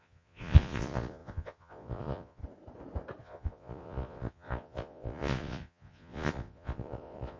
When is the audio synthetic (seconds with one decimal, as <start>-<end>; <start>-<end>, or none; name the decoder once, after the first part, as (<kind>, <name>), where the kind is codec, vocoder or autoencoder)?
0.0-2.4 (vocoder, Vocos); 3.2-7.4

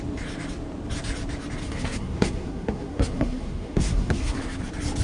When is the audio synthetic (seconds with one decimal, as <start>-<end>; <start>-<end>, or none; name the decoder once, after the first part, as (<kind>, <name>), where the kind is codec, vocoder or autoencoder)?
1.6-4.6 (codec, SNAC)

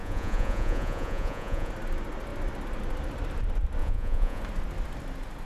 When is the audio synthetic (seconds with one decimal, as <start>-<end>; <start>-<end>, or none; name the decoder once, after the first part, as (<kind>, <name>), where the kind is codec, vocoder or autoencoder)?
0.0-1.7 (vocoder, Vocos); 3.8-4.4

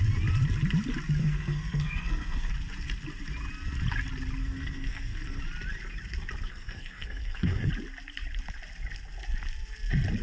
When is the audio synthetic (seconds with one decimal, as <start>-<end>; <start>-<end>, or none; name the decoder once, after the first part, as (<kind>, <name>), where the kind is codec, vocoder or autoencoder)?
1.2-2.5 (codec, SNAC); 4.4-5.4; 6.5-7.7

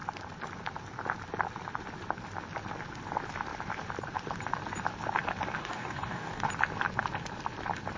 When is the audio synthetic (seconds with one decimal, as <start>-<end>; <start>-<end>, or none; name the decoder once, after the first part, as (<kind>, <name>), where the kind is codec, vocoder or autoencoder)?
5.6-6.5 (codec, DAC)

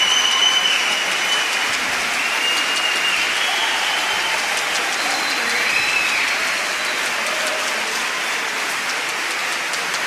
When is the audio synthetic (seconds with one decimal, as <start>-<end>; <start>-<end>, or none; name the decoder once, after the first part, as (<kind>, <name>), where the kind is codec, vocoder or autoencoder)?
none

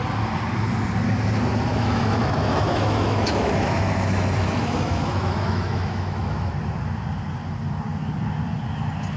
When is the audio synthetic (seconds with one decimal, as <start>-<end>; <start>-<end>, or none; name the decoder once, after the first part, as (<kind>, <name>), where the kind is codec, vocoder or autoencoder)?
1.7-6.5 (autoencoder, DAC-VAE)